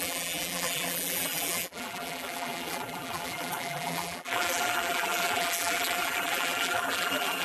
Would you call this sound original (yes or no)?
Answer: no